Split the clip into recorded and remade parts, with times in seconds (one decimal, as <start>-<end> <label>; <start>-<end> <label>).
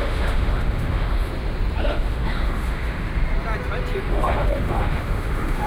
0.0-1.3 remade; 1.3-1.8 recorded; 1.8-3.1 remade; 3.1-4.0 recorded; 4.0-5.7 remade